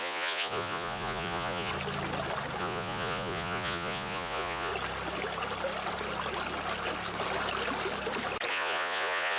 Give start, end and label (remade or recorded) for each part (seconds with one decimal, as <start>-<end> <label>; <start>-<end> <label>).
0.0-1.7 remade; 1.7-2.6 recorded; 2.6-4.7 remade; 4.7-8.5 recorded; 8.5-9.4 remade